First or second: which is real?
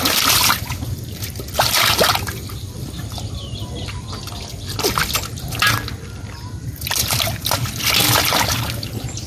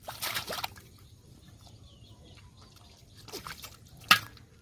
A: first